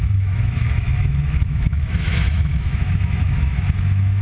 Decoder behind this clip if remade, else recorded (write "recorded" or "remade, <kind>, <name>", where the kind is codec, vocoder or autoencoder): remade, autoencoder, DAC-VAE